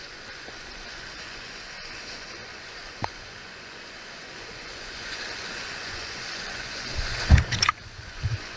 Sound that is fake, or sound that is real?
fake